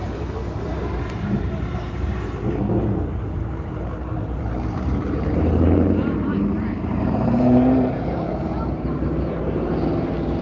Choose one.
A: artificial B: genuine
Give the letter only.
A